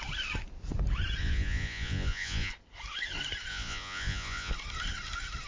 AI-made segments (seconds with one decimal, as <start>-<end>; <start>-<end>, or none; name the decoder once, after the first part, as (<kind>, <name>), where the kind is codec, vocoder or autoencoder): 1.2-2.5 (vocoder, Vocos); 3.5-4.5